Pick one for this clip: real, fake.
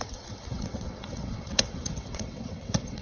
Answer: fake